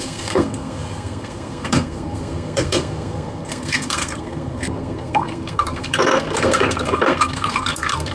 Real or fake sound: fake